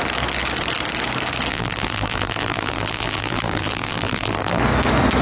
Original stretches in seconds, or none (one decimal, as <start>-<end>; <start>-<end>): 0.0-1.5; 4.6-5.2